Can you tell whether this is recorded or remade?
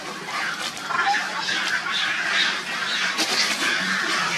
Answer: recorded